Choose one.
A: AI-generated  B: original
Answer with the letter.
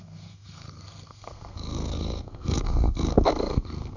A